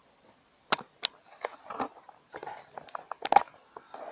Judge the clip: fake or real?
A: real